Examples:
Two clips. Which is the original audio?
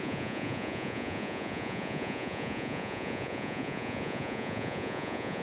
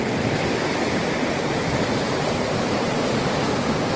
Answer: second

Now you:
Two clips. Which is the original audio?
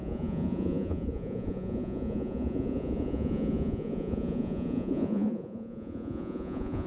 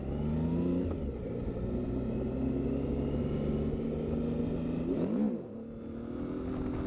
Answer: second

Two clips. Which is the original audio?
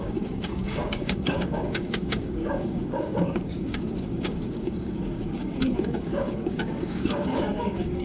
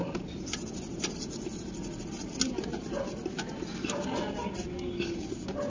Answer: second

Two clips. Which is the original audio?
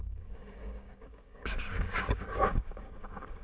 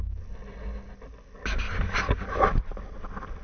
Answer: second